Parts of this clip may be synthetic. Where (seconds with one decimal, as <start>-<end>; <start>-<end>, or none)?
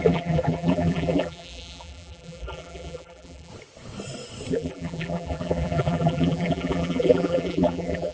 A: 0.0-3.5; 4.5-8.1